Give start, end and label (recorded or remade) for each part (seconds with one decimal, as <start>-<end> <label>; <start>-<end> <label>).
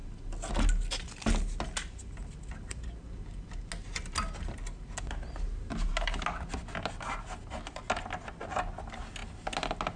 0.0-10.0 recorded